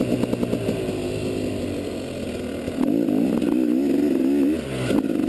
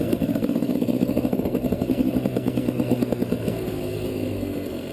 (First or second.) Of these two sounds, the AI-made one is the second